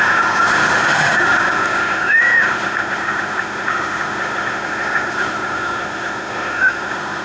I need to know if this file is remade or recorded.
remade